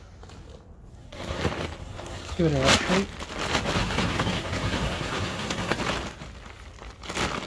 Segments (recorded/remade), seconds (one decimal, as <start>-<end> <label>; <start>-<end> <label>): 0.0-0.9 recorded; 0.9-1.4 remade; 1.4-1.8 recorded; 1.8-2.4 remade; 2.4-3.8 recorded; 3.8-5.8 remade; 5.8-7.5 recorded